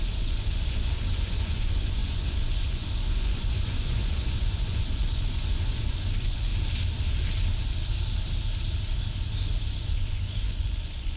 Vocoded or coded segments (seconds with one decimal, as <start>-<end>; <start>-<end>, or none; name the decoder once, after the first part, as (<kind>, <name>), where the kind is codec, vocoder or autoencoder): 0.0-6.5 (vocoder, Vocos); 9.7-11.2